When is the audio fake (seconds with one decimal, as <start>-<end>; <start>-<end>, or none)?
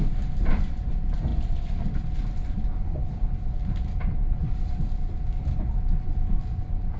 none